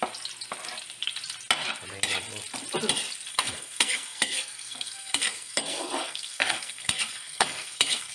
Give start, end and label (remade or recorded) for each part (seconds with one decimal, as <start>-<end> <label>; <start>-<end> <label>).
0.0-3.3 recorded; 3.3-8.1 remade